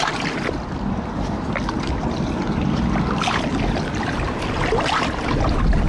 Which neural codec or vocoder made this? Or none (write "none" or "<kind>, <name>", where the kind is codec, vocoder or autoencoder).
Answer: none